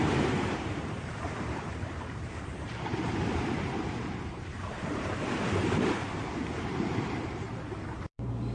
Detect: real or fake fake